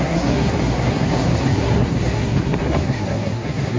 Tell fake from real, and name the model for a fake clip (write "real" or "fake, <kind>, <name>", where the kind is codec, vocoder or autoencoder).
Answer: fake, codec, SNAC